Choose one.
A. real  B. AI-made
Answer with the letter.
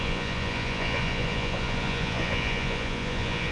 B